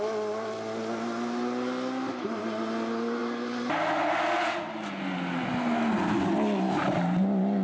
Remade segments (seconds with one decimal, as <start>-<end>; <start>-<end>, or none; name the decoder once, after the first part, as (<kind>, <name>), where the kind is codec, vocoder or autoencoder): none